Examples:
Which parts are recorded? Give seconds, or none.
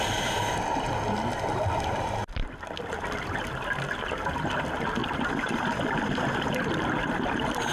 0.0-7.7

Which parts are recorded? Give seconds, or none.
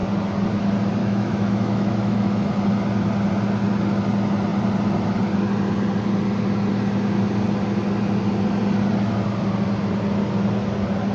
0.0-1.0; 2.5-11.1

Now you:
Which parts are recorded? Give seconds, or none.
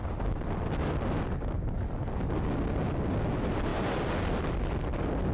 0.0-5.3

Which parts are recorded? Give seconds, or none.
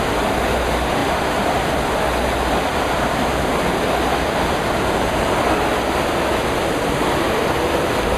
0.0-8.2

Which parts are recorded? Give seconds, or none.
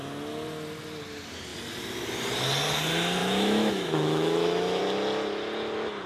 0.0-3.2; 4.8-6.1